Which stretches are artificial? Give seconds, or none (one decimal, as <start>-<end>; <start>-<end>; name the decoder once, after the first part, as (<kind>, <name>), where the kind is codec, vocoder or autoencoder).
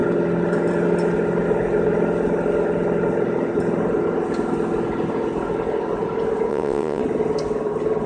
6.5-7.0 (vocoder, WaveNeXt)